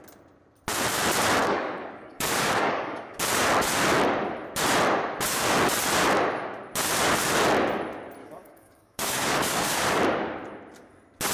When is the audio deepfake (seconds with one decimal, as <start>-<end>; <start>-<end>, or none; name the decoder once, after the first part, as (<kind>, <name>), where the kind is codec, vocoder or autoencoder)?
1.4-3.2 (codec, DAC); 8.2-10.0

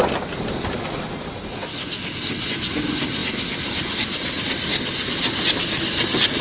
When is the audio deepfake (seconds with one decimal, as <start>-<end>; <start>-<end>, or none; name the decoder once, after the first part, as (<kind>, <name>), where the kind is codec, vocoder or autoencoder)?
none

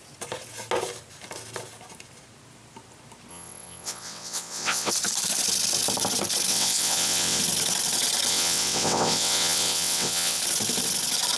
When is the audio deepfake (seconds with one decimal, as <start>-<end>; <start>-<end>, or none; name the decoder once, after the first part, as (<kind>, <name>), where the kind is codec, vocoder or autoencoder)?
3.3-4.9 (vocoder, WaveNeXt); 6.5-7.4; 8.3-10.4

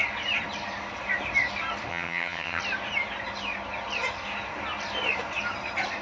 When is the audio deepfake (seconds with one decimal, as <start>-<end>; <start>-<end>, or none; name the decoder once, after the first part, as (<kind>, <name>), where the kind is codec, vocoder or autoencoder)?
1.9-2.6 (vocoder, HiFi-GAN)

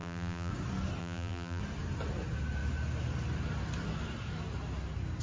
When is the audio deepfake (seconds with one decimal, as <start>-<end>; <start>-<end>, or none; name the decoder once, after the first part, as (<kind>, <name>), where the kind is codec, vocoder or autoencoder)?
0.0-0.5 (vocoder, BigVGAN v2); 1.0-1.6